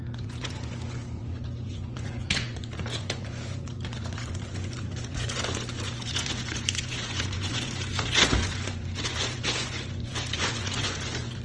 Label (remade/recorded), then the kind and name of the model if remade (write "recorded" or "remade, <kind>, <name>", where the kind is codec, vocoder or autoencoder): remade, vocoder, Vocos